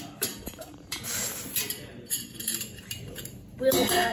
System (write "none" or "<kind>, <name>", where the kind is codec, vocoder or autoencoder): vocoder, BigVGAN v2